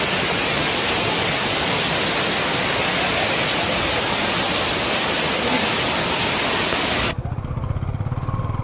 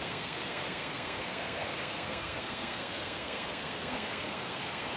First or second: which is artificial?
second